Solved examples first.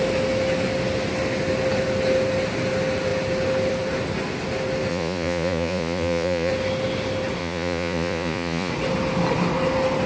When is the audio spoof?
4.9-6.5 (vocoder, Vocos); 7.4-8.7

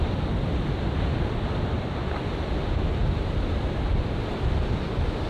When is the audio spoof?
3.0-4.6 (vocoder, BigVGAN v2)

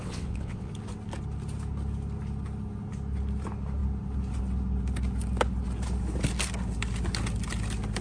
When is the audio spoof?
0.0-0.7 (vocoder, WaveNeXt)

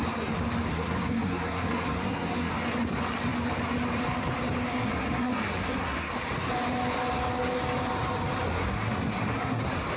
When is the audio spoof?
0.7-2.5 (codec, SNAC); 4.7-6.1; 8.5-9.6